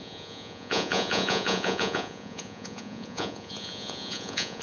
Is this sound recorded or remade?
remade